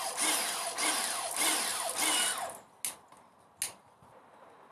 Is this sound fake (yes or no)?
no